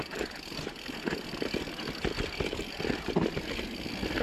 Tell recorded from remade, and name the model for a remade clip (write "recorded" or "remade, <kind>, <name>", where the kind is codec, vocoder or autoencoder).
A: recorded